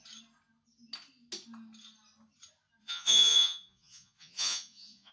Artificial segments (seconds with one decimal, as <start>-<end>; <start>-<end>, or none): 2.8-5.1